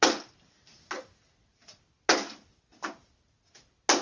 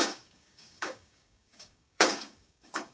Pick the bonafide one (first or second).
first